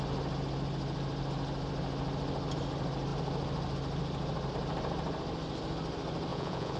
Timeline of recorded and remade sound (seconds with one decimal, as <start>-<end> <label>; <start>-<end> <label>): 0.0-6.3 recorded; 6.3-6.8 remade